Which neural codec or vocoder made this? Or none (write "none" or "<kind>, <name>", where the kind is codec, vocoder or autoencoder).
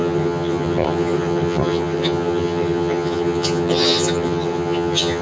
vocoder, HiFi-GAN